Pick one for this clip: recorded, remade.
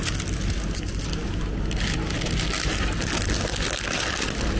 recorded